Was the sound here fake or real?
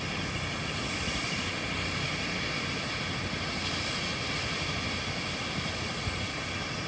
real